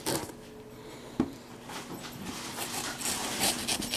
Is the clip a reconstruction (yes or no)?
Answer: no